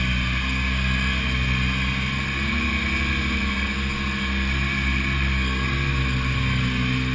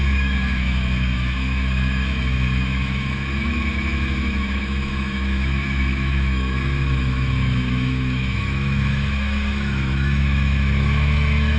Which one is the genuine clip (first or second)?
first